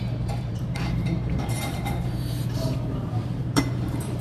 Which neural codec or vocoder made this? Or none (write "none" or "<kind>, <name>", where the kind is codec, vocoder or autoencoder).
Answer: vocoder, BigVGAN v2